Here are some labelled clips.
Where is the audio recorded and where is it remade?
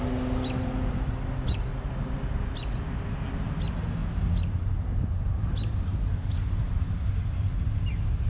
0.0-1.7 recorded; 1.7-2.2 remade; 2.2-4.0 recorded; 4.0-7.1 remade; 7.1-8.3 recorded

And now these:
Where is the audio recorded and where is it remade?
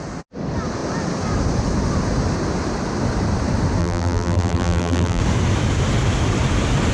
0.0-3.8 recorded; 3.8-5.2 remade; 5.2-6.9 recorded